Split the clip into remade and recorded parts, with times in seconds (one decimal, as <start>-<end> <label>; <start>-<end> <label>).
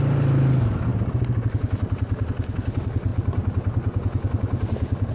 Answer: 0.0-0.9 recorded; 0.9-2.3 remade; 2.3-5.1 recorded